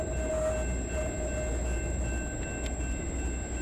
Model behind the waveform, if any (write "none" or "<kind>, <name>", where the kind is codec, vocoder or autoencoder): none